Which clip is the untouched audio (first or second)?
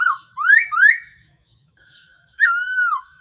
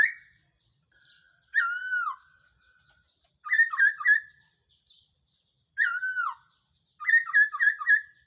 second